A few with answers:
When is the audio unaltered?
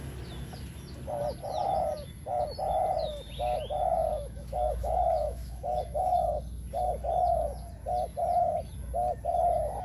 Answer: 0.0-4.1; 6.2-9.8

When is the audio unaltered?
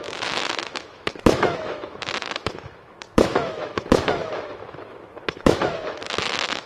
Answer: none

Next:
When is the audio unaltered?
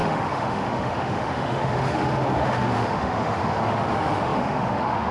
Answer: none